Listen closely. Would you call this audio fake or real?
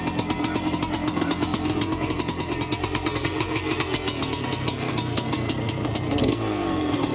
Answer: fake